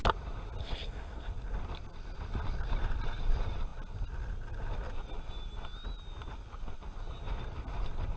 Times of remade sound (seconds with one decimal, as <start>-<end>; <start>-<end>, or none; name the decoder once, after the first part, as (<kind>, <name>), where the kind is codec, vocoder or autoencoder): 0.6-1.3 (codec, SNAC)